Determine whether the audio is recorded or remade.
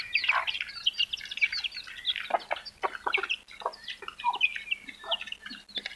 recorded